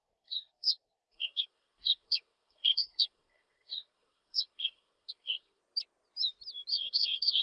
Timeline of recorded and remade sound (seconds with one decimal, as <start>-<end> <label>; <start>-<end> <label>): 0.0-5.6 remade; 5.6-6.7 recorded; 6.7-7.4 remade